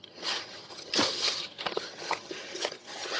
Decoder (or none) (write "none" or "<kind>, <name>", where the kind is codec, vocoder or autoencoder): vocoder, HiFi-GAN